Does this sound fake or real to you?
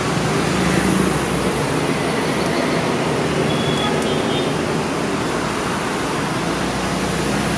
real